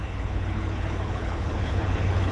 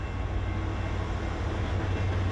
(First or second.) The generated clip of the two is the first